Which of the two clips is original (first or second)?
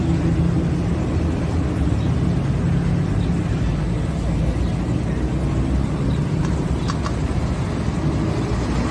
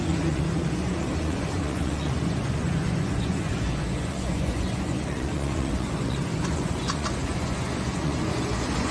first